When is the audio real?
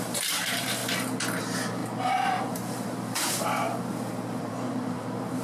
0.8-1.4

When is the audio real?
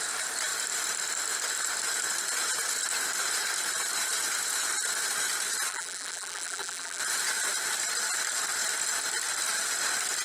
0.0-5.7; 7.0-10.2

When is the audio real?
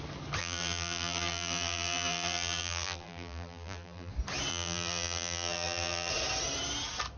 0.0-0.4; 4.1-4.5; 6.1-7.2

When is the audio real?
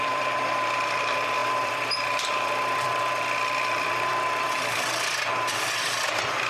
none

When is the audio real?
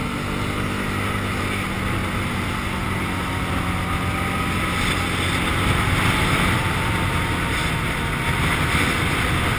0.0-9.6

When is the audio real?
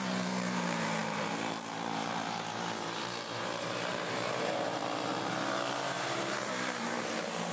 4.8-5.7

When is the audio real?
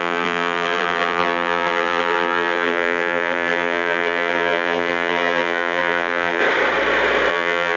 6.4-7.3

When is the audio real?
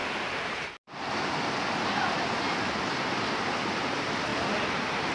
3.1-4.3